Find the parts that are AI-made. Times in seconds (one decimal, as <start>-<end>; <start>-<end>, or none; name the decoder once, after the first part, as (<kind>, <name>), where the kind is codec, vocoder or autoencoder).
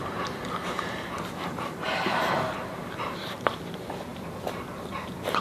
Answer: 0.0-5.4 (vocoder, BigVGAN v2)